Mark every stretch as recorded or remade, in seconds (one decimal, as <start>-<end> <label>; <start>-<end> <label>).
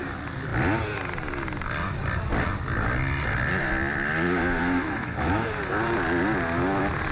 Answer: 0.0-4.6 recorded; 4.6-5.6 remade; 5.6-7.1 recorded